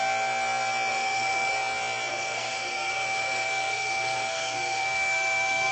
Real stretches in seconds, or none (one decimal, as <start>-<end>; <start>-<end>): 0.0-0.9; 1.5-2.1